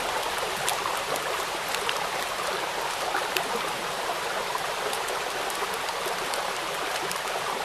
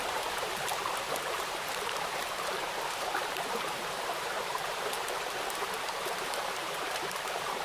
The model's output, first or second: second